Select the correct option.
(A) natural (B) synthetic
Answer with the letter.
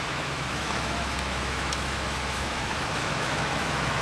B